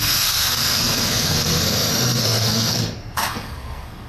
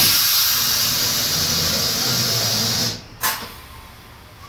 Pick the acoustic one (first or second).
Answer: second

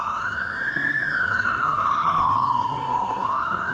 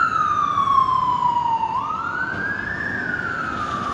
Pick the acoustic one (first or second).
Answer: second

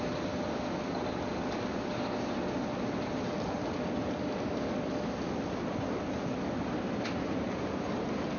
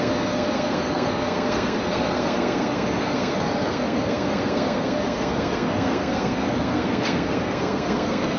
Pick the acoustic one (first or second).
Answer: first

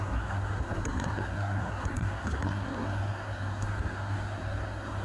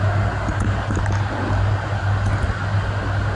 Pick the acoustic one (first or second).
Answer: second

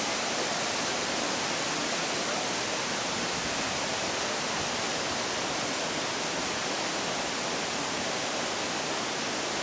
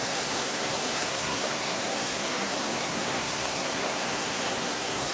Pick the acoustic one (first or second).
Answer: first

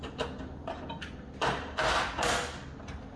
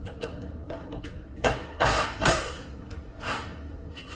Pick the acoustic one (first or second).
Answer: first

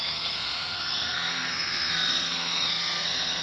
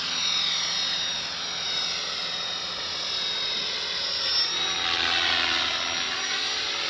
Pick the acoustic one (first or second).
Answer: second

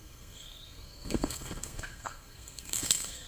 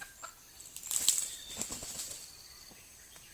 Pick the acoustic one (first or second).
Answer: second